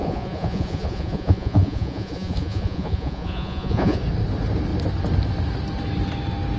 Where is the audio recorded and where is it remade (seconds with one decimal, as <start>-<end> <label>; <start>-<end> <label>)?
0.0-4.0 remade; 4.0-6.6 recorded